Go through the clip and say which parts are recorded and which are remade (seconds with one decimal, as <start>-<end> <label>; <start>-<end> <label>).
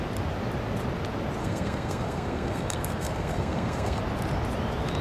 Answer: 0.0-1.4 recorded; 1.4-4.0 remade; 4.0-5.0 recorded